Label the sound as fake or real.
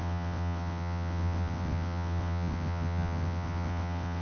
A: fake